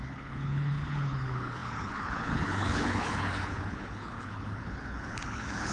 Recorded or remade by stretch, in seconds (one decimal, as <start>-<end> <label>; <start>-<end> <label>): 0.0-5.7 remade